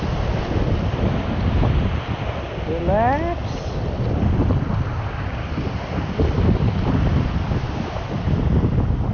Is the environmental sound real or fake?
real